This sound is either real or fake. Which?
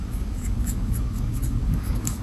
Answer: fake